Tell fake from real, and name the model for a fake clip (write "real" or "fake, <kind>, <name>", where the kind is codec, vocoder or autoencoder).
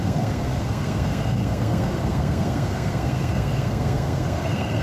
fake, codec, SNAC